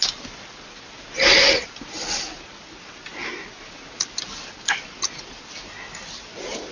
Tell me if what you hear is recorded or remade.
recorded